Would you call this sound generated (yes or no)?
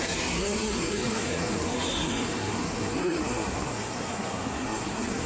yes